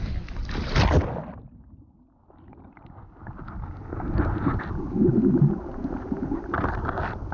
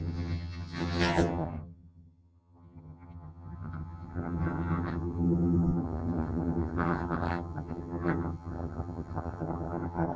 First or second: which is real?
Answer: first